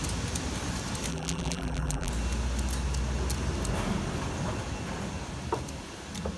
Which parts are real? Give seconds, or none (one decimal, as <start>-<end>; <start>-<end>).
0.0-1.1; 2.1-6.4